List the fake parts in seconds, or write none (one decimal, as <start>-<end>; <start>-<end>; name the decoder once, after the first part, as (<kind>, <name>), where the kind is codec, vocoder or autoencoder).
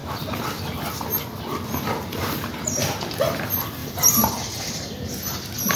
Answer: 3.8-4.3 (vocoder, BigVGAN v2)